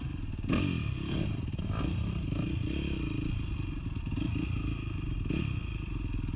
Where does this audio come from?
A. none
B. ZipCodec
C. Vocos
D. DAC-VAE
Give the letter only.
A